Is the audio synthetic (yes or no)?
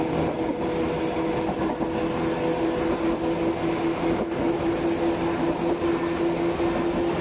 no